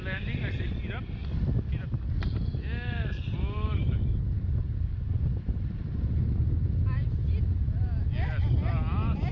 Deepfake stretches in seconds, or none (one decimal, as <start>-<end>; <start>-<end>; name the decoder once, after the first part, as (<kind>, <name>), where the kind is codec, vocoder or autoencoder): none